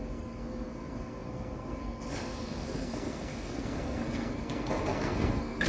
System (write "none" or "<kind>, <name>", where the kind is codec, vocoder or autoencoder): codec, SNAC